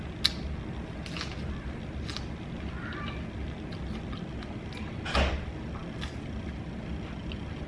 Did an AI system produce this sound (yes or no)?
no